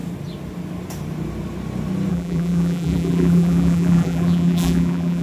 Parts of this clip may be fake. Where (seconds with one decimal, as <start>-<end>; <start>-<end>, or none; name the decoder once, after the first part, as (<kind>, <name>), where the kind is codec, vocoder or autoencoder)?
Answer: 2.1-5.2 (vocoder, BigVGAN v2)